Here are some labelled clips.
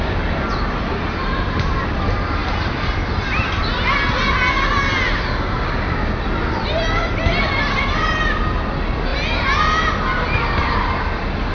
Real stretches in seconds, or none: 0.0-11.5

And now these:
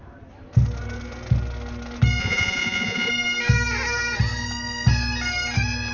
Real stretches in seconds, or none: 0.0-2.2; 3.1-5.9